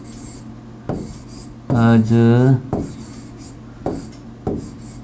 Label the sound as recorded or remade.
recorded